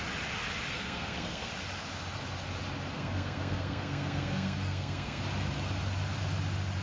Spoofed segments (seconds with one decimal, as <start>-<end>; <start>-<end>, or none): 0.7-1.5; 2.9-5.2